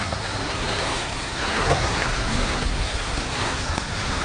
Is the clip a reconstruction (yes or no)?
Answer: yes